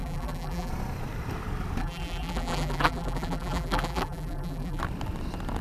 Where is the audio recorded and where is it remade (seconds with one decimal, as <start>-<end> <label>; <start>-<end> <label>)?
0.0-0.7 remade; 0.7-1.8 recorded; 1.8-4.8 remade; 4.8-5.6 recorded